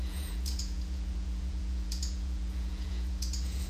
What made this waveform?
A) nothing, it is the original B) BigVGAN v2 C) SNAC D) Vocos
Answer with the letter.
D